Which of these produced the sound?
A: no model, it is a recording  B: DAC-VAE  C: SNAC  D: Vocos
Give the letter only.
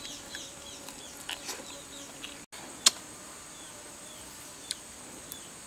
A